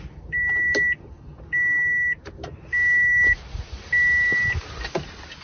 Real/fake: real